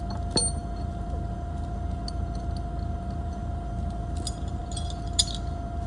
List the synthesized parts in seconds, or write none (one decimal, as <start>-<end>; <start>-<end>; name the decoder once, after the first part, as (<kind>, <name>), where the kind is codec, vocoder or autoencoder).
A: none